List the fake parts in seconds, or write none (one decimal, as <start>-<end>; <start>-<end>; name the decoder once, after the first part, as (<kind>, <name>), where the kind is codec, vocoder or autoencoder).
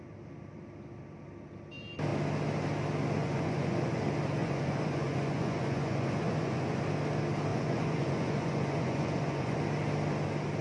3.2-4.0 (vocoder, Vocos); 4.4-6.8; 7.5-9.6